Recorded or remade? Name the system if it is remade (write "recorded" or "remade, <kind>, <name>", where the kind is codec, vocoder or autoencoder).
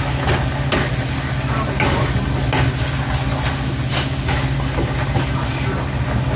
recorded